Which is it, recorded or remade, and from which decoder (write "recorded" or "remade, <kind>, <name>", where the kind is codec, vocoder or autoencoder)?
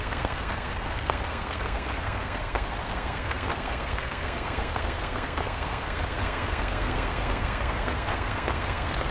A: remade, codec, SNAC